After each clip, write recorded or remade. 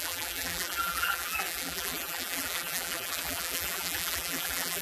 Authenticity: remade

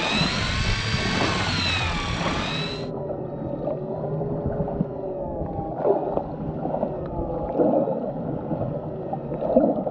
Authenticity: recorded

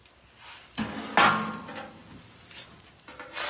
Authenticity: recorded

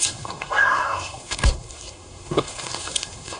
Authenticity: remade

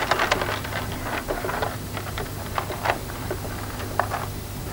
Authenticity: recorded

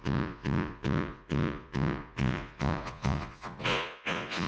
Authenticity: remade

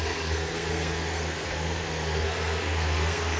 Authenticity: remade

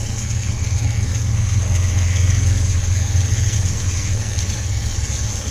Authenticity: remade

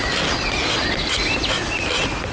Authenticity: recorded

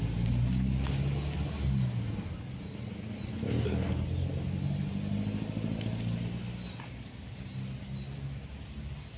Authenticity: recorded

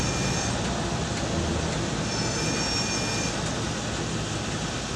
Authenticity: recorded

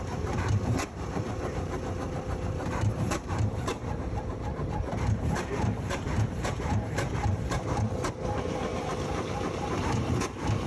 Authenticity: remade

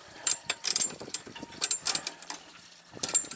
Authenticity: remade